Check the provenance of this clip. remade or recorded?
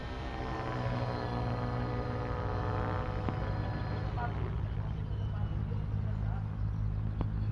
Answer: recorded